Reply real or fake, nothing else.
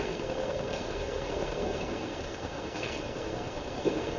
fake